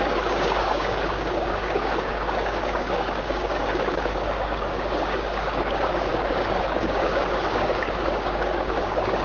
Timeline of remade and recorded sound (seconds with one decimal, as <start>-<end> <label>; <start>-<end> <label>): 0.0-9.2 remade